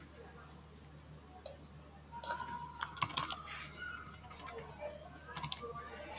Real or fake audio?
real